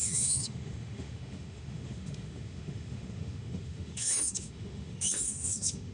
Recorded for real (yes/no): no